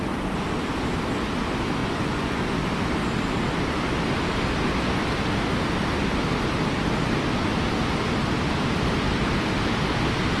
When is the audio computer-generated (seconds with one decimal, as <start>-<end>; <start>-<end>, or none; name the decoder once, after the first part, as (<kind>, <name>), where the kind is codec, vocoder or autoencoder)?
1.8-2.4 (vocoder, Vocos)